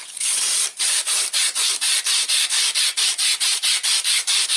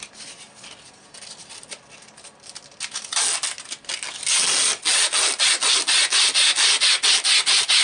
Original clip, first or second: second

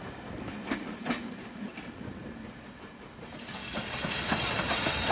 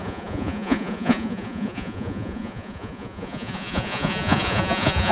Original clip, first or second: first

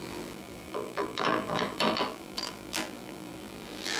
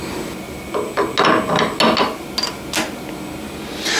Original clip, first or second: second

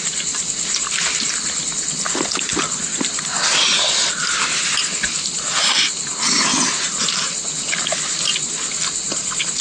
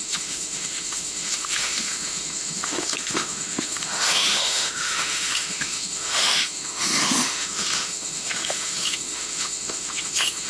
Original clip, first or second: first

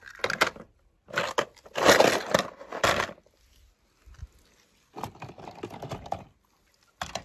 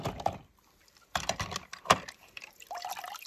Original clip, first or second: first